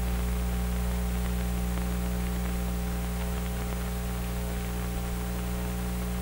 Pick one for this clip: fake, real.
real